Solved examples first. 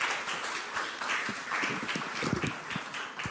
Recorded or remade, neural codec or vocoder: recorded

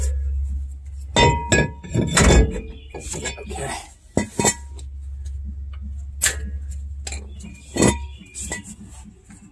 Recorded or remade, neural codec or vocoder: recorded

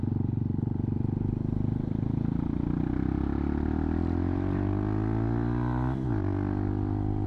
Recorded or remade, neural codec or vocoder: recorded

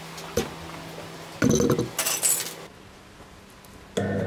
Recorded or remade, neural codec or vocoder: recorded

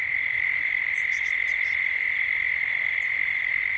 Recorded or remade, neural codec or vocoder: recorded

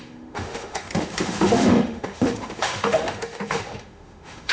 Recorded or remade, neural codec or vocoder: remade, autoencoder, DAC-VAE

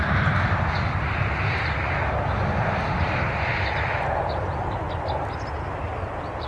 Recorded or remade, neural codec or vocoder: recorded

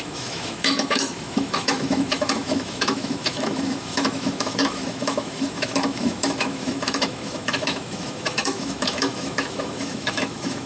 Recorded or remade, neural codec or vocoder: remade, autoencoder, DAC-VAE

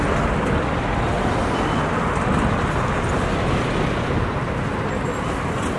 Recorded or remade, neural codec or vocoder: recorded